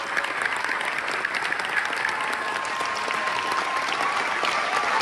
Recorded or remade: recorded